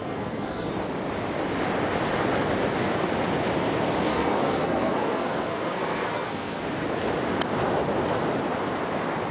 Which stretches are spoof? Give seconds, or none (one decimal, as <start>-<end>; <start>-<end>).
0.0-0.7; 4.1-6.6